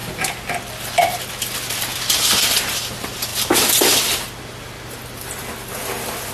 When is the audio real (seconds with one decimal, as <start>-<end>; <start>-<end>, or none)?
1.2-1.9; 2.9-3.3; 4.4-6.3